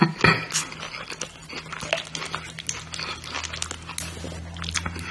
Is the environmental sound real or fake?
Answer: real